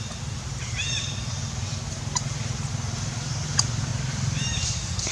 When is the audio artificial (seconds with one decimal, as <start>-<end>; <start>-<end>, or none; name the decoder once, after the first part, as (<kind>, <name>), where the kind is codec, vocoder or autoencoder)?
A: 0.0-3.9 (vocoder, BigVGAN v2)